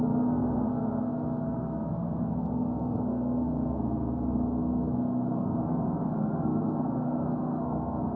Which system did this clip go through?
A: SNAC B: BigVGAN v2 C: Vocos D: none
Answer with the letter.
A